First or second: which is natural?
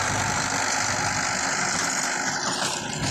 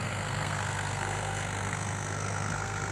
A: first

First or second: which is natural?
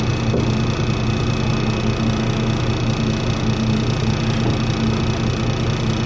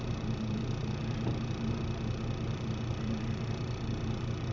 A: first